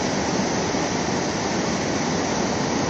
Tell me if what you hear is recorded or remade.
recorded